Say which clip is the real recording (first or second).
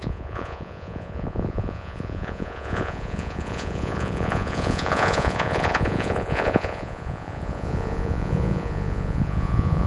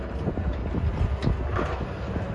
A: second